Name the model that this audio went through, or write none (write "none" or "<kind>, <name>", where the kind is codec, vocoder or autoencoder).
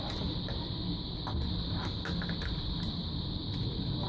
none